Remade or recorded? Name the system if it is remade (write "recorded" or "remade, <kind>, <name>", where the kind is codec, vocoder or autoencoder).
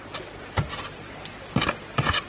recorded